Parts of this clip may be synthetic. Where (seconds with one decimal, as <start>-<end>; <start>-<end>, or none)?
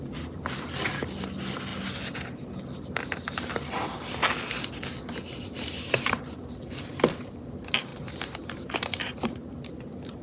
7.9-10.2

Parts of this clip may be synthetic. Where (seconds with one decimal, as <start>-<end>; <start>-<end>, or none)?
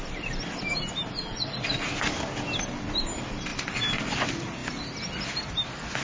3.5-4.1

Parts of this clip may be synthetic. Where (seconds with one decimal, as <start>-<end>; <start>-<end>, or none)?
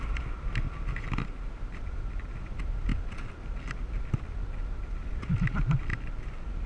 5.9-6.7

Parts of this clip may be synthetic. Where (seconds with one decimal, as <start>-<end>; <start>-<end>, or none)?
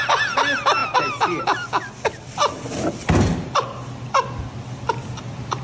none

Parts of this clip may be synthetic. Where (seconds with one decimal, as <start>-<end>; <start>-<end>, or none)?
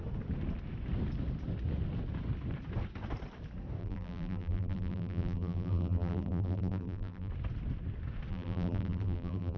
3.8-7.3; 8.3-9.6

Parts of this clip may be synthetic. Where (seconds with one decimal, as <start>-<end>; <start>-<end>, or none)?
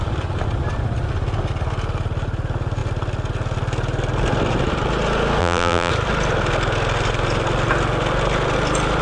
5.4-5.9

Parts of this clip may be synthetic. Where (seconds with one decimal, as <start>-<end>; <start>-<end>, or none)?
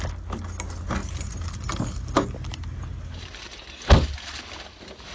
none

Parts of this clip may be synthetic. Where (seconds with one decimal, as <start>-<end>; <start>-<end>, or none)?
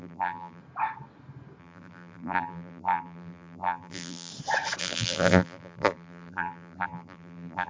0.0-0.6; 1.6-4.3; 4.8-7.7